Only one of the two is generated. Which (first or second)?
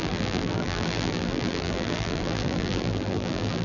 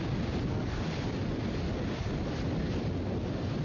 first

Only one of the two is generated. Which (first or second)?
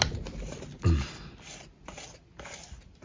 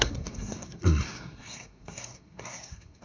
second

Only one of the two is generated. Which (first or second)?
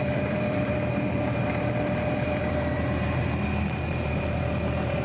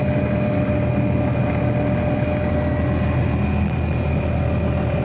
first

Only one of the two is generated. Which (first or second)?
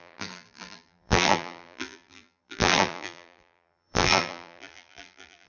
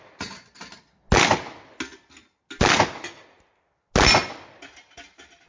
first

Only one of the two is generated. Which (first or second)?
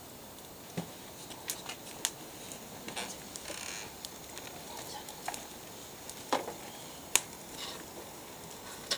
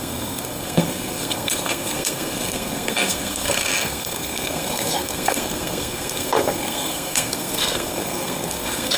second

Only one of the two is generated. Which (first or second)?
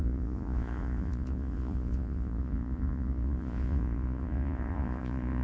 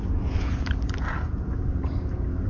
first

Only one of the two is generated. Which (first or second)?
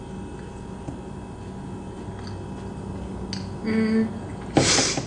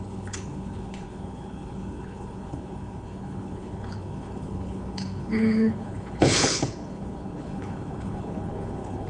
second